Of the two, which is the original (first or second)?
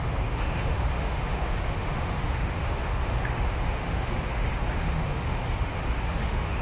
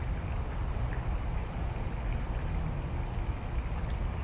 second